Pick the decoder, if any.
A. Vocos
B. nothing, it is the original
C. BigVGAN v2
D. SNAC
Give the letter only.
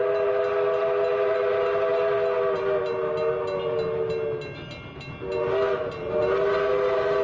B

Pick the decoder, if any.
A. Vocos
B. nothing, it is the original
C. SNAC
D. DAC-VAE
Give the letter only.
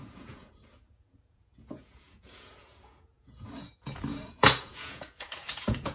A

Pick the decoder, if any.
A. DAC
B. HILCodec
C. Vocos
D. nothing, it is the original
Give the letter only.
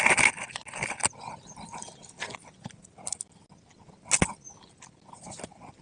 D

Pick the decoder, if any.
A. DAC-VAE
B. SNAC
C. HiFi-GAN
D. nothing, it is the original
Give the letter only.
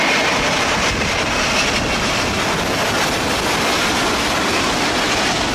D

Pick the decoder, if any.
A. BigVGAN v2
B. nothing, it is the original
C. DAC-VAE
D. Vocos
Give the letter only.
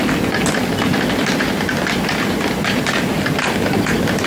B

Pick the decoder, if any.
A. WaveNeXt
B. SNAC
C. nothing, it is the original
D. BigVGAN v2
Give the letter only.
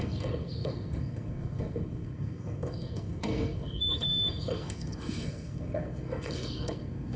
B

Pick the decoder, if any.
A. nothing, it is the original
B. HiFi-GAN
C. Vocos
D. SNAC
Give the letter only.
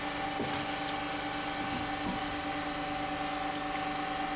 A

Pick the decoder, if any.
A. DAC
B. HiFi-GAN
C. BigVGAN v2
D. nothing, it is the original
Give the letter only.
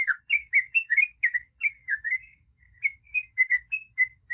A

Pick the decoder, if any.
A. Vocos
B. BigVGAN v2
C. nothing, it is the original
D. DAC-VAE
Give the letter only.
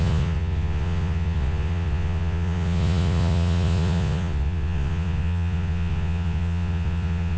A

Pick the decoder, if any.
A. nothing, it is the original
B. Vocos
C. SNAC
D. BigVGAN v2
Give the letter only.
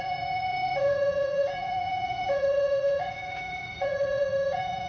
B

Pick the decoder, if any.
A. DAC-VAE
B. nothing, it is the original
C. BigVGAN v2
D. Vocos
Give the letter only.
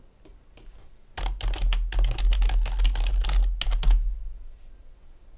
B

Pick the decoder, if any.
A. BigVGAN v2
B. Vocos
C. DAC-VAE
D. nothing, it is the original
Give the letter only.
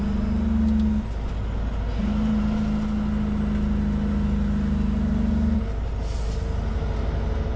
D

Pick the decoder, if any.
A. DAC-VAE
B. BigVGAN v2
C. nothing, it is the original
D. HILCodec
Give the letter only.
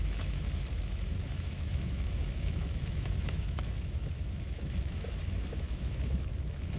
A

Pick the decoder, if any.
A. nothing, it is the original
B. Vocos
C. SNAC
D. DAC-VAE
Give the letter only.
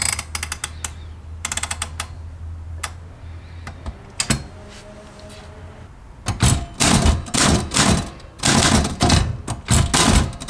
A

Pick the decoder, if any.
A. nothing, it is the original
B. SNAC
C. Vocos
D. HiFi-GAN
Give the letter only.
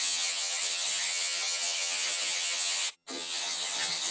D